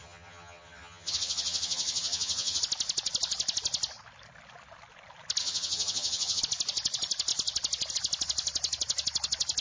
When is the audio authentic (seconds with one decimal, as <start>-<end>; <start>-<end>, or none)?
2.6-5.4; 6.4-9.6